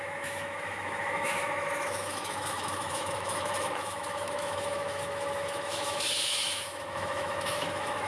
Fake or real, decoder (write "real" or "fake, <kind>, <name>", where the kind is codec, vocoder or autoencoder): fake, autoencoder, DAC-VAE